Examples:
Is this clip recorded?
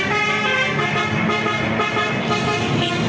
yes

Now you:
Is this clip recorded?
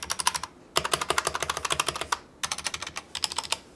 yes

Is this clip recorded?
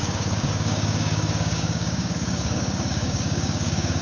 no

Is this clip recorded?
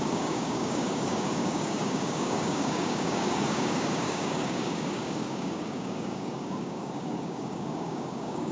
no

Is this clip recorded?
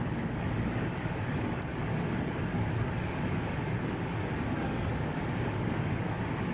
no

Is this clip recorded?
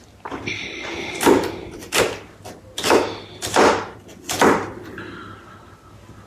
yes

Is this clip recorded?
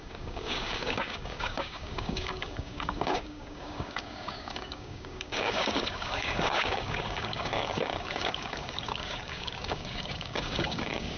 no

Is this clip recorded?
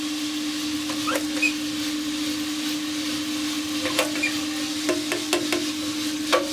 yes